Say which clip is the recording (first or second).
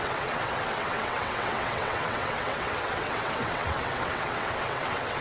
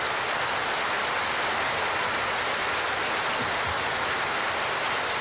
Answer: second